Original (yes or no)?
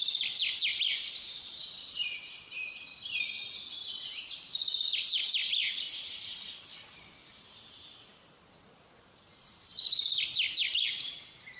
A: yes